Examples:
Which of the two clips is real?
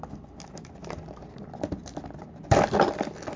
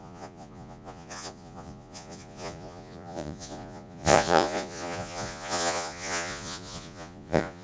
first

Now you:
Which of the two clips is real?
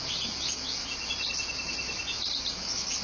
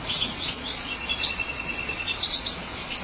first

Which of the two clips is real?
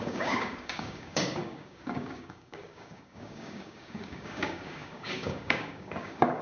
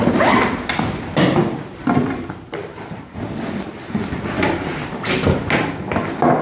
second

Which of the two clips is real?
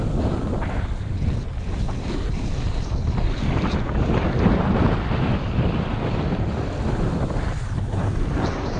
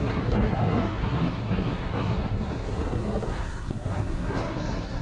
first